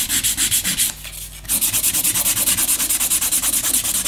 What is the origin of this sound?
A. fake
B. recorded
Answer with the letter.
B